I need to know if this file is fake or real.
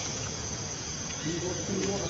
fake